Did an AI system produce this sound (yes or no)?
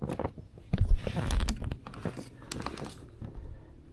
no